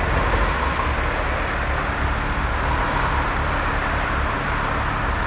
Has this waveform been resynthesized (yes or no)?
no